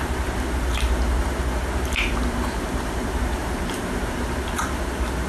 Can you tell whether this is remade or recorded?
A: remade